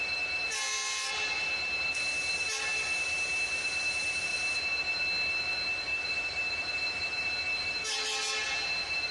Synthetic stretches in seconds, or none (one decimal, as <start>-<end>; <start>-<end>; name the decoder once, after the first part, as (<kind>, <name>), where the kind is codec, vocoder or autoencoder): none